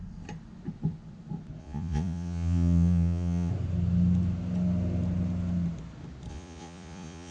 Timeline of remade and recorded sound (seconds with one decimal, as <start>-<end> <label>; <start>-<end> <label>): 0.0-1.6 recorded; 1.6-3.5 remade; 3.5-6.3 recorded; 6.3-7.3 remade